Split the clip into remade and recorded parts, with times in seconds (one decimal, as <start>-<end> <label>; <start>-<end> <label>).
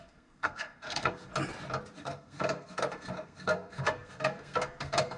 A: 0.0-1.3 remade; 1.3-2.0 recorded; 2.0-5.2 remade